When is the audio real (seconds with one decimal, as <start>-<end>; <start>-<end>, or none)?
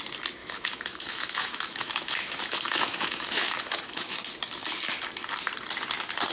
0.0-0.4; 4.2-6.3